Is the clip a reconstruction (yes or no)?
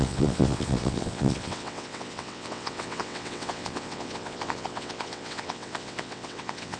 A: yes